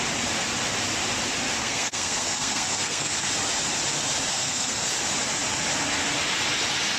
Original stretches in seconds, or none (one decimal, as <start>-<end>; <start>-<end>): 0.0-1.6; 3.3-4.3; 4.9-7.0